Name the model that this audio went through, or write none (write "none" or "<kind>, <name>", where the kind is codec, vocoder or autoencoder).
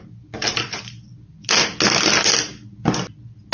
none